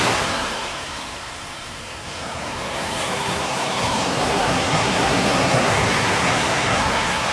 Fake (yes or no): yes